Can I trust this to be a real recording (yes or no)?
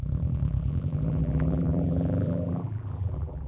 no